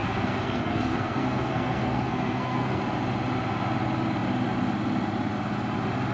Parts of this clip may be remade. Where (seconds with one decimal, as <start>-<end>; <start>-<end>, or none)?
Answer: 0.0-2.8